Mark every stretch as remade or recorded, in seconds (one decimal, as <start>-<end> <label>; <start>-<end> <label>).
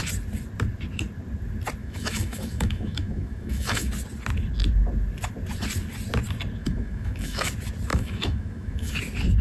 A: 0.0-1.8 recorded; 1.8-3.9 remade; 3.9-6.6 recorded; 6.6-7.5 remade; 7.5-7.9 recorded; 7.9-8.9 remade; 8.9-9.4 recorded